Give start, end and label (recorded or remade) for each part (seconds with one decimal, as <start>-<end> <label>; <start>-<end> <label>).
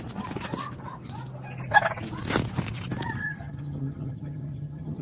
0.0-3.2 recorded; 3.2-5.0 remade